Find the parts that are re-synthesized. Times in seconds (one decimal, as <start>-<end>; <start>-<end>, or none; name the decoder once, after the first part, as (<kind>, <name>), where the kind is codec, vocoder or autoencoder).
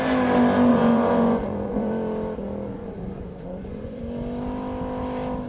0.7-1.9 (vocoder, Vocos); 2.8-4.0